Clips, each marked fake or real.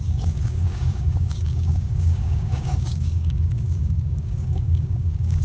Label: fake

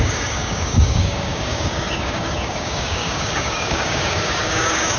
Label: fake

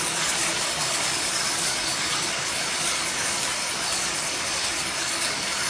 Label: fake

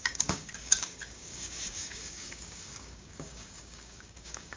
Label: fake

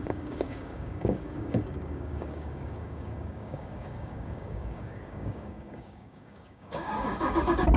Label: fake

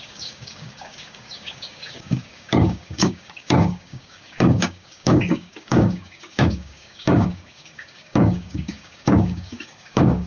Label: fake